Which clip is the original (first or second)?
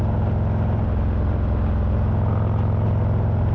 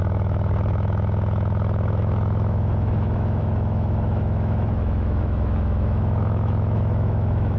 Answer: first